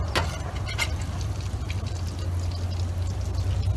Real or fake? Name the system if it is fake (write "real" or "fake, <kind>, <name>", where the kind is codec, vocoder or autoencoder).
real